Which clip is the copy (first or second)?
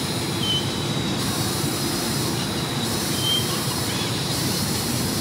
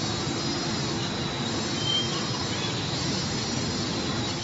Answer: first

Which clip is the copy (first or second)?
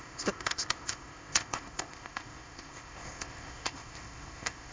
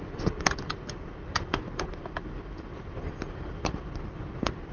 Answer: first